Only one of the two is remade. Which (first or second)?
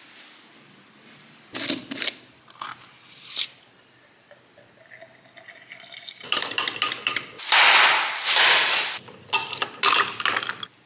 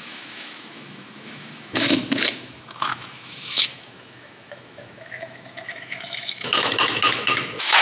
second